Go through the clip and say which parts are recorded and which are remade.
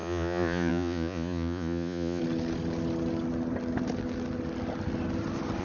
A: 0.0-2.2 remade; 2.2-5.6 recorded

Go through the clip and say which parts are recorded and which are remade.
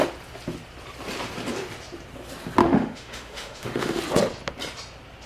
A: 0.0-2.6 recorded; 2.6-4.0 remade; 4.0-5.3 recorded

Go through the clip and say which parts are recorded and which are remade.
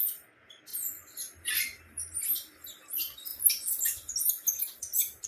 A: 0.0-5.3 recorded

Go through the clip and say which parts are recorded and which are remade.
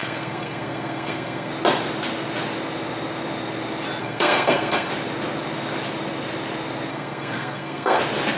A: 0.0-1.5 remade; 1.5-4.0 recorded; 4.0-4.9 remade; 4.9-6.9 recorded; 6.9-8.0 remade; 8.0-8.4 recorded